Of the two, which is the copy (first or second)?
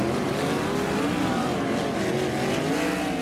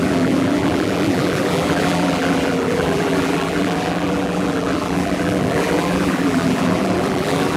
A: second